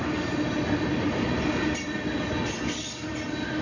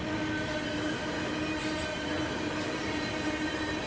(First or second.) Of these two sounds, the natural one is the second